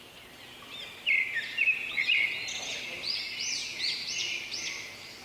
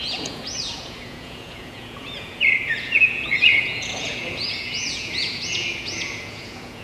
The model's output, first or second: second